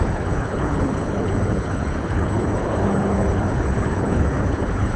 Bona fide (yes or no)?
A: no